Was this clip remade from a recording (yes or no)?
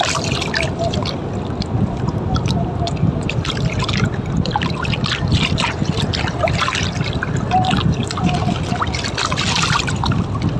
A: no